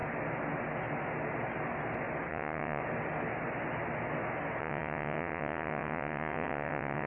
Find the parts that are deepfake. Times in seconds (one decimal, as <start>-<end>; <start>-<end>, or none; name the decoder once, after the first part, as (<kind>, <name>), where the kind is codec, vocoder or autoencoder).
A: 2.3-2.8 (vocoder, WaveNeXt); 4.6-7.1